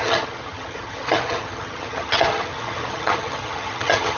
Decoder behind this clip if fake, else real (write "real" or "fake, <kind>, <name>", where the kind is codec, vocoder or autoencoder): fake, vocoder, HiFi-GAN